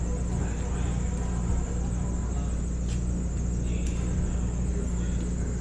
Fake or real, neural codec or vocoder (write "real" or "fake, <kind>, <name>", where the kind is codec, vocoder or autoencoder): real